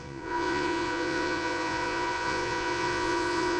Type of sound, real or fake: fake